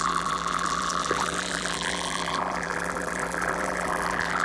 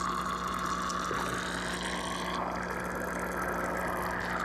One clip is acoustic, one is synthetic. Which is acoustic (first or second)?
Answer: second